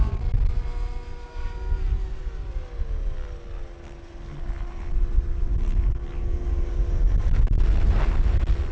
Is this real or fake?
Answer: real